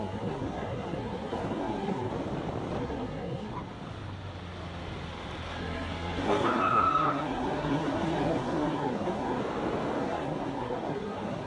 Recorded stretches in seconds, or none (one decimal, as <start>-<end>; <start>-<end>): 2.1-2.8; 3.5-5.6; 9.4-10.0

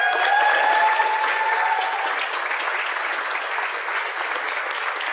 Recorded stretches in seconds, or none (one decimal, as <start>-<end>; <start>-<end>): 0.0-1.0; 4.1-5.1

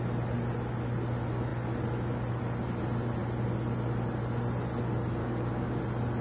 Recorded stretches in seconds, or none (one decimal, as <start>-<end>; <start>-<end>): 0.0-5.2; 5.8-6.2

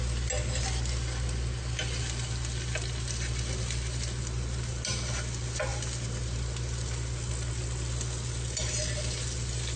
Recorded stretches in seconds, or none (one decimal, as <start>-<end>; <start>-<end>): 0.0-9.8

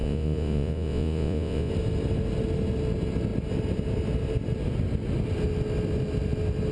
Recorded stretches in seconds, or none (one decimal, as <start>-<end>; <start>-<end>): 1.7-6.7